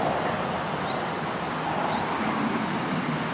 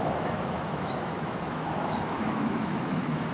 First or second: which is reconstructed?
second